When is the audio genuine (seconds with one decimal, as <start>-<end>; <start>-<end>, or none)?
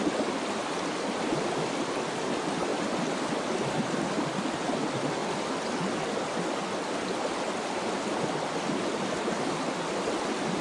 0.0-10.6